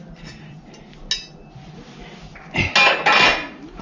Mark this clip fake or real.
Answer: real